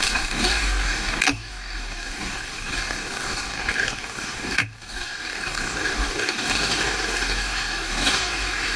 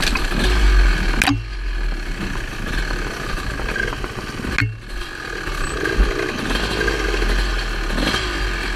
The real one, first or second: second